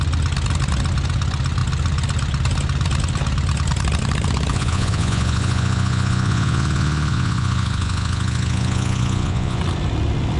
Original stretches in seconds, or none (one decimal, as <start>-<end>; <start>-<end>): 0.0-4.5; 9.6-10.4